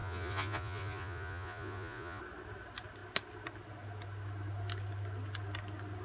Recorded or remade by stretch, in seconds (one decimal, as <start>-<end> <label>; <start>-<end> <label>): 0.0-2.2 remade; 2.2-6.0 recorded